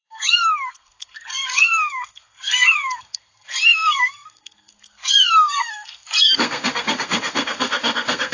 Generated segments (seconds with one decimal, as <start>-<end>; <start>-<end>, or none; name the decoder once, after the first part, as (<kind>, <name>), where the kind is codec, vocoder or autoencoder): 0.0-8.3 (codec, SNAC)